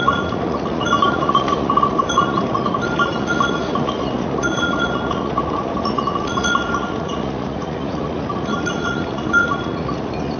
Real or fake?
fake